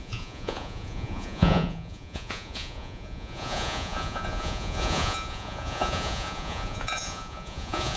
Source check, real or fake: fake